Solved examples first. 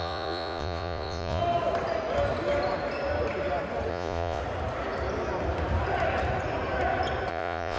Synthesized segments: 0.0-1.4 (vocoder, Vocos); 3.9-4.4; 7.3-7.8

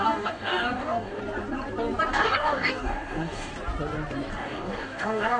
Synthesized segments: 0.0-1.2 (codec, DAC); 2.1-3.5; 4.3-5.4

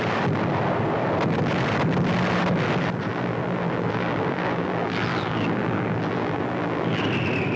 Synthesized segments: 3.1-7.0 (vocoder, BigVGAN v2)

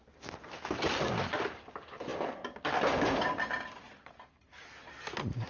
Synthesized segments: none

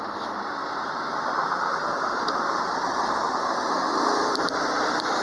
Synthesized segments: 0.6-3.7 (vocoder, BigVGAN v2); 4.2-5.2